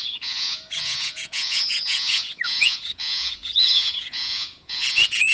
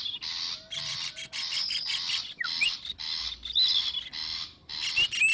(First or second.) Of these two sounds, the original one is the second